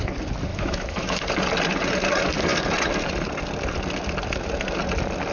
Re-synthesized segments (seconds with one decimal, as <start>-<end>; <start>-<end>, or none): 0.5-1.2